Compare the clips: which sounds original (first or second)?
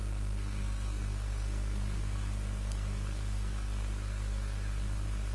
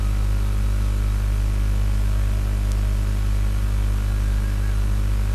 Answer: second